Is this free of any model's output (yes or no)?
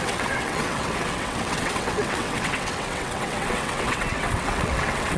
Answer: no